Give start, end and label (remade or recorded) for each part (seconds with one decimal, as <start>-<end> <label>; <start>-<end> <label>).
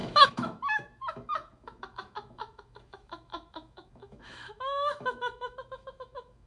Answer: 0.0-6.5 remade